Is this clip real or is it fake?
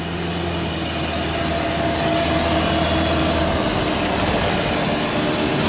real